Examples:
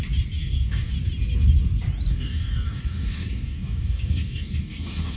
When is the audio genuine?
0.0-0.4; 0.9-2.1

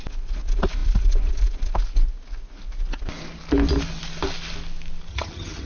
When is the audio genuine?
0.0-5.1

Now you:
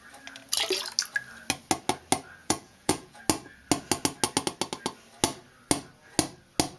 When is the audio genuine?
0.0-2.4; 3.2-6.8

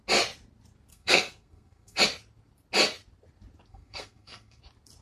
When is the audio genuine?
0.0-0.9; 2.0-3.7; 4.6-5.0

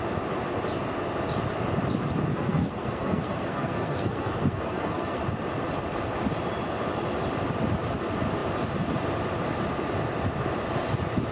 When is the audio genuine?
0.0-2.3; 5.2-11.3

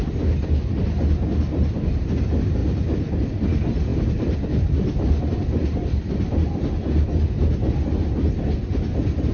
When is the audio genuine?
0.0-2.6; 3.4-3.9; 7.1-9.3